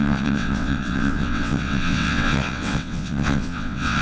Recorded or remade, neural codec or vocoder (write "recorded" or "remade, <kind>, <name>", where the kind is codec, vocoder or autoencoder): remade, vocoder, WaveNeXt